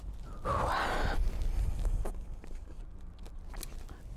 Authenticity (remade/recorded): recorded